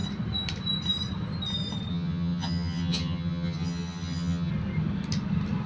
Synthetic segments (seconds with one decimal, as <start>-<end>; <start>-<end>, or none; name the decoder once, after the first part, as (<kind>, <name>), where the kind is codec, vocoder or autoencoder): 1.9-4.5 (vocoder, HiFi-GAN)